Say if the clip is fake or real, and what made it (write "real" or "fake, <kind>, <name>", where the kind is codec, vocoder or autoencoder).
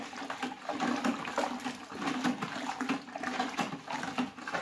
real